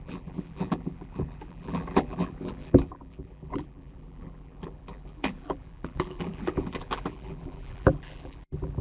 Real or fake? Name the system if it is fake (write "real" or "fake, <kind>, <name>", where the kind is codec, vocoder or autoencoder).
fake, vocoder, BigVGAN v2